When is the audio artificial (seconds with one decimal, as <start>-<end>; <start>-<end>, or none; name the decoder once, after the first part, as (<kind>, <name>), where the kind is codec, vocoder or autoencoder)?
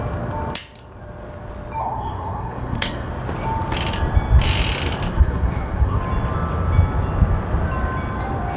1.8-3.1 (codec, SNAC); 5.1-6.0